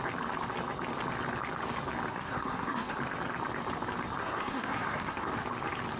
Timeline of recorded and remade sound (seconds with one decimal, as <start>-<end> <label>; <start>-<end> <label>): 0.0-2.1 recorded; 2.1-3.0 remade; 3.0-4.2 recorded; 4.2-5.3 remade; 5.3-6.0 recorded